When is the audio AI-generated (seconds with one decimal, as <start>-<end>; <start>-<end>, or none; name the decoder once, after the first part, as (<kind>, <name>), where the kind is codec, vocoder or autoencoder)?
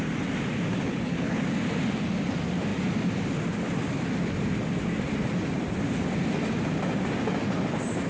0.7-1.4 (codec, HILCodec)